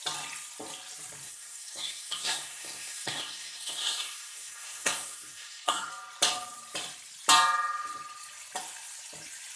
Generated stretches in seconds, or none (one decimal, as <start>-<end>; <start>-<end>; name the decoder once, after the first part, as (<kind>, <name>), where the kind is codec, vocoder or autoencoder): 1.2-5.9 (codec, SNAC)